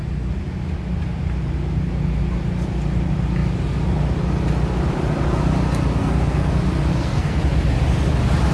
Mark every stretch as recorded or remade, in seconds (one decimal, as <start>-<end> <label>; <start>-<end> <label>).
0.0-6.0 recorded; 6.0-6.5 remade; 6.5-6.9 recorded; 6.9-7.4 remade; 7.4-8.5 recorded